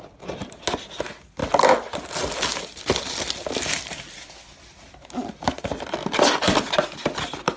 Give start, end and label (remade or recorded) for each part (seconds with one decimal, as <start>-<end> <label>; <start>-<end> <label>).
0.0-7.6 recorded